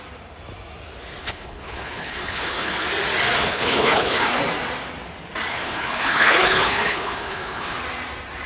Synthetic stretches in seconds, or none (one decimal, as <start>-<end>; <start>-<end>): 1.2-2.7; 3.4-4.3; 5.5-7.8